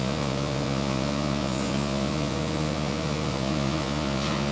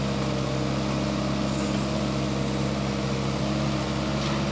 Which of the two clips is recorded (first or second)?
second